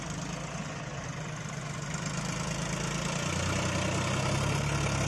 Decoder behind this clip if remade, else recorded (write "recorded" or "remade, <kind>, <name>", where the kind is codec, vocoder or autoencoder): recorded